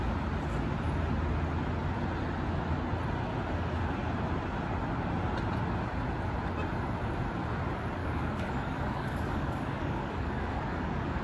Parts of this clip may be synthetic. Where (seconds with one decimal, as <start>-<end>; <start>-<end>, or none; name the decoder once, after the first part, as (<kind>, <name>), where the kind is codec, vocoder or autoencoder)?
8.0-11.2 (codec, DAC)